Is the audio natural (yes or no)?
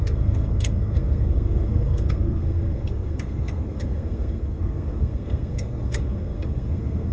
no